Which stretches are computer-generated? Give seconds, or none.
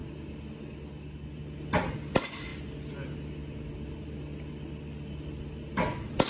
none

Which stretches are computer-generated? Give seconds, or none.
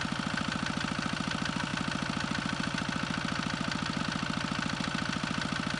0.0-5.8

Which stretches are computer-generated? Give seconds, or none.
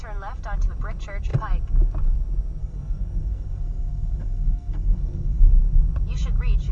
2.6-5.5